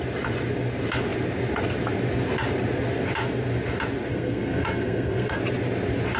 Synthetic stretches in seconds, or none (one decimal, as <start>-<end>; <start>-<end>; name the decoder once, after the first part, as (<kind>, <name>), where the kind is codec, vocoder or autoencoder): 4.1-5.4 (codec, SNAC)